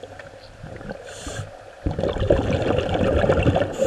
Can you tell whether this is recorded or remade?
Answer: recorded